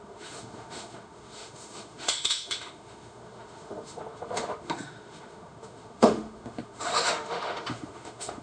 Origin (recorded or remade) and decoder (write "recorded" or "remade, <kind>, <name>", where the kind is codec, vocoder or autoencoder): remade, autoencoder, DAC-VAE